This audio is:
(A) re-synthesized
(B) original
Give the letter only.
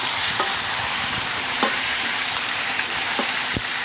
A